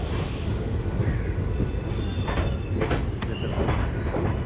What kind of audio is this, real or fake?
real